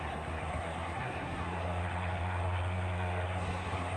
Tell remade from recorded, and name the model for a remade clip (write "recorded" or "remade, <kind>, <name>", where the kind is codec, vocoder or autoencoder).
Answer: remade, codec, SNAC